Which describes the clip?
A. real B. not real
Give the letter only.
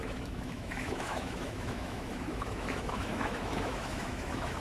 B